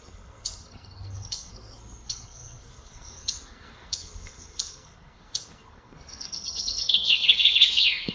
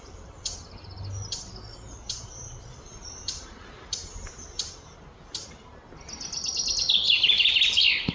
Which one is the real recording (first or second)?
second